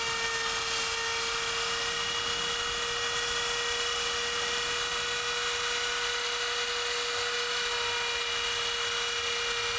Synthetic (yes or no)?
no